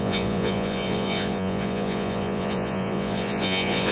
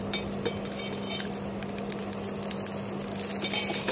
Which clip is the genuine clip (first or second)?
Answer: second